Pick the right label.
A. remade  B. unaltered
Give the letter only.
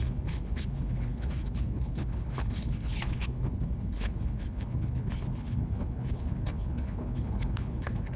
A